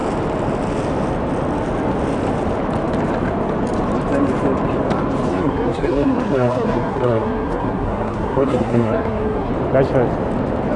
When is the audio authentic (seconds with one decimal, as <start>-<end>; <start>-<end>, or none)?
0.0-5.3; 9.5-10.8